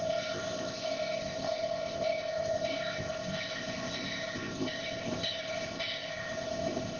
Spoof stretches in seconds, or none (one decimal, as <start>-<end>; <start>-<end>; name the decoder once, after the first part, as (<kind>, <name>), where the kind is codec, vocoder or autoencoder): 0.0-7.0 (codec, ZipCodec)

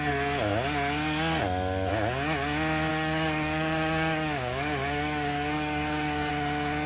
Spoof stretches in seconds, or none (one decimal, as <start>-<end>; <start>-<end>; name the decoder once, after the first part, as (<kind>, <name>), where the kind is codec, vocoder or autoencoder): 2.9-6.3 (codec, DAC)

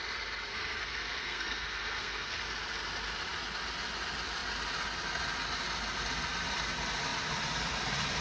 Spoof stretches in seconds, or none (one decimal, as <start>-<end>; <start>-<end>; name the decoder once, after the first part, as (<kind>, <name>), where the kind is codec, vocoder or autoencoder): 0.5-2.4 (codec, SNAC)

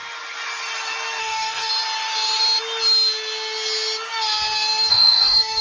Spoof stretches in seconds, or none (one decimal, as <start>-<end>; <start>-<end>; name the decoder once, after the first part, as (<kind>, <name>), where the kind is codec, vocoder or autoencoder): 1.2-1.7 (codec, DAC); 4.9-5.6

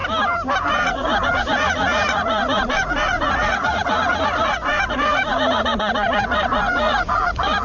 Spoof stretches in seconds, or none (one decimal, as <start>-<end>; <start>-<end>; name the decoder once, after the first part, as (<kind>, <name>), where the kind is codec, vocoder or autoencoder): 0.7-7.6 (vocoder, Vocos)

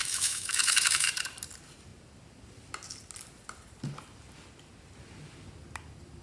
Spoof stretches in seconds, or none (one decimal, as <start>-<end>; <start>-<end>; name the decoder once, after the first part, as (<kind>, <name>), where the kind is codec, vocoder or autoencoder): 0.0-1.1 (autoencoder, DAC-VAE)

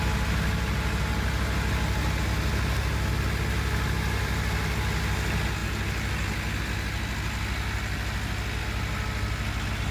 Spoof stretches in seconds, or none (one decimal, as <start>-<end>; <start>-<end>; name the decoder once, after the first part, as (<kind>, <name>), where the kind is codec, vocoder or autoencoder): none